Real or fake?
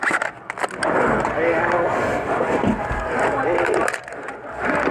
real